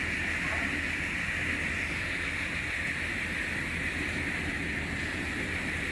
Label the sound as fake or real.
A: real